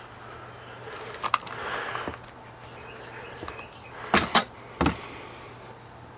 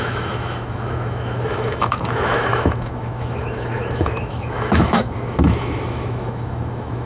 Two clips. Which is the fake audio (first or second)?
second